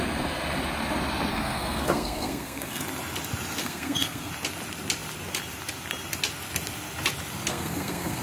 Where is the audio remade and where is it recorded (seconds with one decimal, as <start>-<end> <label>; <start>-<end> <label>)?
0.0-1.3 recorded; 1.3-2.8 remade; 2.8-3.6 recorded; 3.6-4.3 remade; 4.3-7.5 recorded; 7.5-8.2 remade